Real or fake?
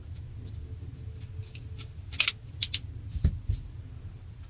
real